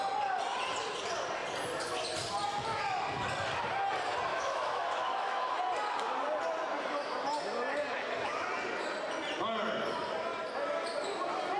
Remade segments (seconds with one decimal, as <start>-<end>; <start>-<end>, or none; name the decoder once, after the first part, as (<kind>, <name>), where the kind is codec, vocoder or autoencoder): 4.3-5.6 (autoencoder, DAC-VAE)